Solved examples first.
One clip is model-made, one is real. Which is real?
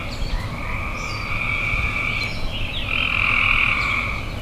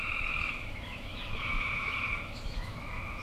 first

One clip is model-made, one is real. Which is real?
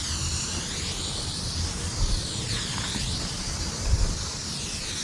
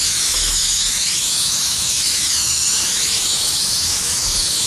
first